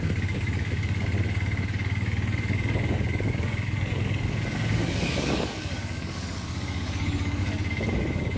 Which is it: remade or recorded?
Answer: remade